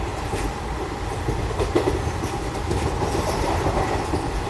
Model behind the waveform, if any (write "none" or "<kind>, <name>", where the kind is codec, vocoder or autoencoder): vocoder, BigVGAN v2